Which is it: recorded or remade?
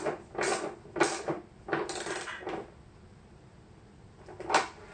recorded